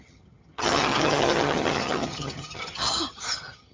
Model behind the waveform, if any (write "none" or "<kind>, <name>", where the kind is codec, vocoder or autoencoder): vocoder, HiFi-GAN